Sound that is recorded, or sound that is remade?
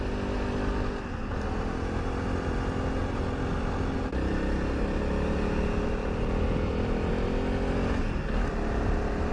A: recorded